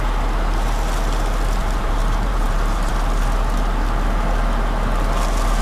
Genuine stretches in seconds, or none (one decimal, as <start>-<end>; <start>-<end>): 0.0-1.6; 2.9-5.6